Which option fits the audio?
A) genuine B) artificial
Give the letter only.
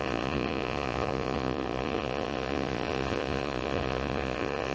B